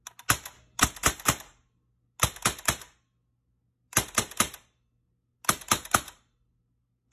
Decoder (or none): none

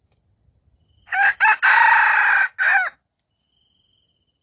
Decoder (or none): none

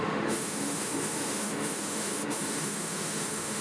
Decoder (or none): autoencoder, DAC-VAE